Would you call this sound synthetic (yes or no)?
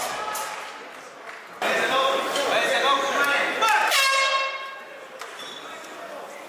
no